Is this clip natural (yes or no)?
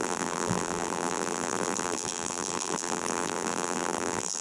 no